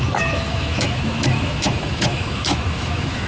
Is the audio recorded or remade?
remade